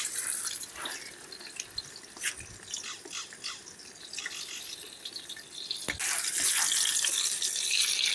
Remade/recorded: recorded